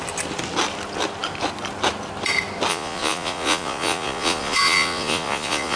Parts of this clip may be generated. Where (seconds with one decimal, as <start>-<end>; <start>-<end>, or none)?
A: 2.7-5.8